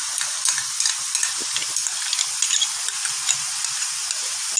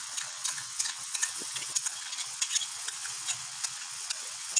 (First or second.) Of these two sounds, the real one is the first